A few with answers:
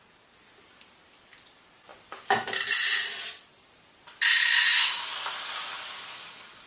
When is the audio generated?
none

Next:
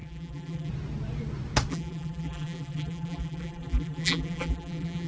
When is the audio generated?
0.0-0.7 (vocoder, BigVGAN v2); 1.7-5.1

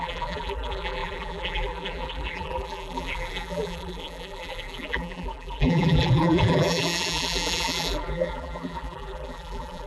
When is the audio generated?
0.0-9.9 (vocoder, BigVGAN v2)

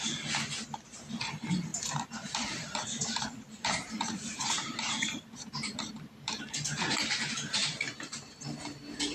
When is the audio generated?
1.7-6.4 (vocoder, BigVGAN v2)